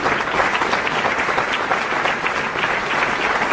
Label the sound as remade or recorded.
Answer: recorded